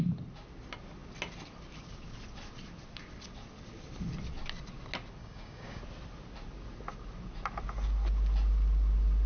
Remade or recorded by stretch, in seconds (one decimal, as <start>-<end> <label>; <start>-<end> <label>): 0.0-5.2 recorded; 5.2-5.8 remade; 5.8-9.3 recorded